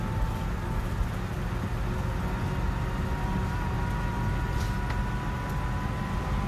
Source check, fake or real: real